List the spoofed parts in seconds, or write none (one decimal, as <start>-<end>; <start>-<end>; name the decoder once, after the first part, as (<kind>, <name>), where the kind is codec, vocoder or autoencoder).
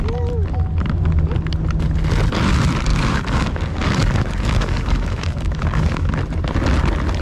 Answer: 2.9-6.2 (codec, DAC)